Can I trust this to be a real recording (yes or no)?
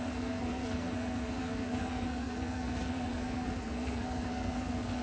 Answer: no